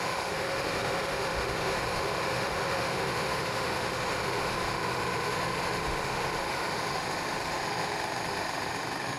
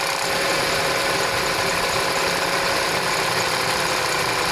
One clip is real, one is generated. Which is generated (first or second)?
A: first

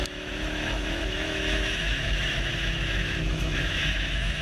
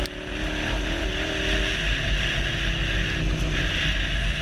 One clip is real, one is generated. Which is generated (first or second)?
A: first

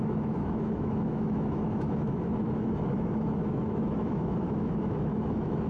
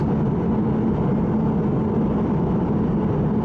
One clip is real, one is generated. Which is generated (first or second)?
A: first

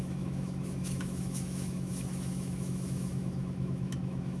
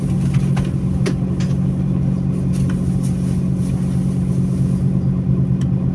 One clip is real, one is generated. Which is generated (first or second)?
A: first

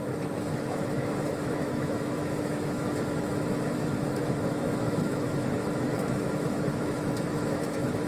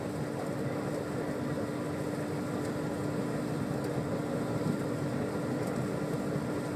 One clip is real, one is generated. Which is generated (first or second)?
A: first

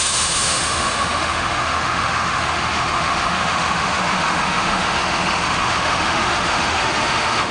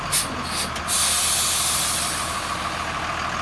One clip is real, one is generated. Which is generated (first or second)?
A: first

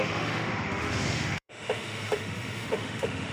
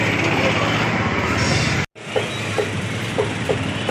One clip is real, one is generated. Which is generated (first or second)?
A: first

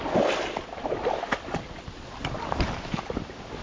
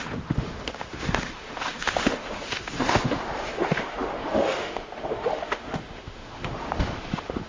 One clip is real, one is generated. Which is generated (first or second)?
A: second